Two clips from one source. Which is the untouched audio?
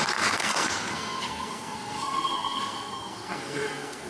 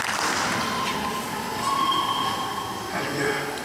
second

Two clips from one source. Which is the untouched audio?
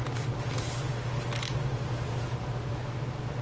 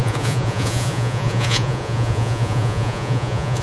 first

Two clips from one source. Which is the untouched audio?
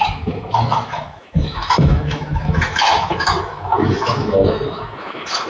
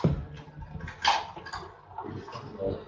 second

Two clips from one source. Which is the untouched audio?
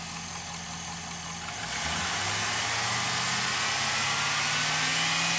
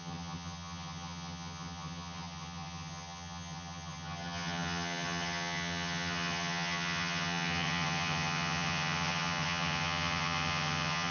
first